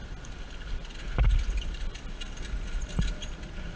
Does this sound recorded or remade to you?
recorded